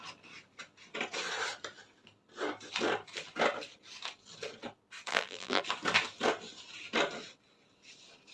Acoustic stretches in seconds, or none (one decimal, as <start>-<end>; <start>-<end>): 0.0-5.1; 5.6-8.3